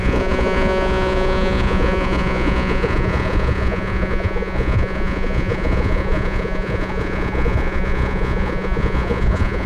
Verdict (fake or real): fake